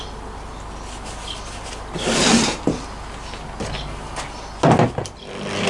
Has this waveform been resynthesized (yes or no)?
no